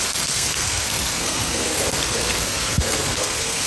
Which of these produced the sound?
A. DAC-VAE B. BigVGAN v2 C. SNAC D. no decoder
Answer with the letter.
C